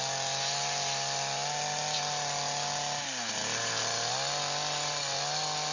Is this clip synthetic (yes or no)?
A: no